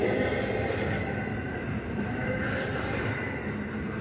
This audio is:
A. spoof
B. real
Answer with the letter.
B